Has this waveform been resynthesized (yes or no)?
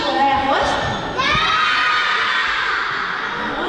no